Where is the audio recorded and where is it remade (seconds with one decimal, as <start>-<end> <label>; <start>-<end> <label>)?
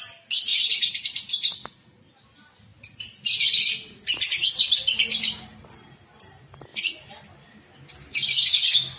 0.0-0.5 recorded; 0.5-1.3 remade; 1.3-9.0 recorded